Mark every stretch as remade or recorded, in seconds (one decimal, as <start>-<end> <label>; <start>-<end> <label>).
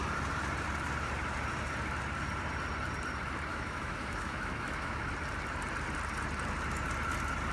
0.0-3.5 recorded; 3.5-5.1 remade; 5.1-7.5 recorded